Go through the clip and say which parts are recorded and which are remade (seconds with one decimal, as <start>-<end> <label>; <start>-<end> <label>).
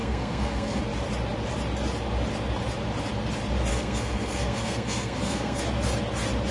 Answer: 0.0-0.8 remade; 0.8-3.7 recorded; 3.7-5.6 remade; 5.6-6.5 recorded